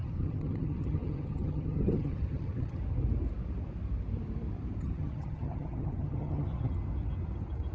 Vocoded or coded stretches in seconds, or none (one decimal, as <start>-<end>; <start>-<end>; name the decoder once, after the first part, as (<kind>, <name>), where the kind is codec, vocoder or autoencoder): 0.0-2.8 (vocoder, HiFi-GAN); 4.8-6.7